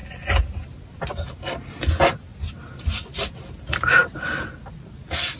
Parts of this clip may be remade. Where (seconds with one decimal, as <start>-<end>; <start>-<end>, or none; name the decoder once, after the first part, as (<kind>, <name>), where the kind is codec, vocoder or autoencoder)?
none